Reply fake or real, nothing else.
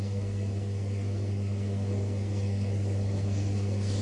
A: fake